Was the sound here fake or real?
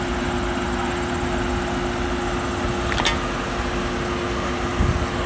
real